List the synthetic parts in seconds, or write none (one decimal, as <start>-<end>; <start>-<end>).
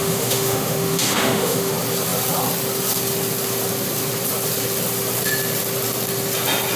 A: 0.0-1.7